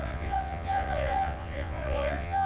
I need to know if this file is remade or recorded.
remade